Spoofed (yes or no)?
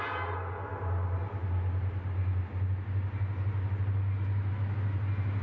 no